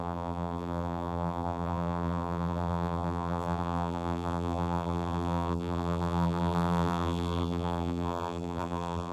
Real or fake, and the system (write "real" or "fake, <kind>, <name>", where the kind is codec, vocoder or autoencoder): fake, vocoder, BigVGAN v2